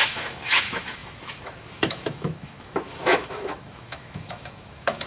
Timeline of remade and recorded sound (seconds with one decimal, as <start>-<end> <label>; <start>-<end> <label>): 0.0-5.1 remade